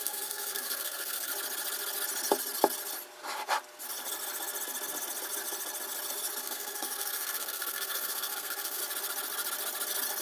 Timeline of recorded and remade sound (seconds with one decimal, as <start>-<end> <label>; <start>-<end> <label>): 0.0-1.3 remade; 1.3-6.4 recorded; 6.4-8.8 remade; 8.8-10.2 recorded